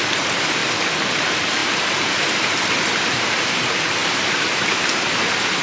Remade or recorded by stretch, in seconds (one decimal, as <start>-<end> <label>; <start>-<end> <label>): 0.0-0.6 remade; 0.6-1.1 recorded; 1.1-5.6 remade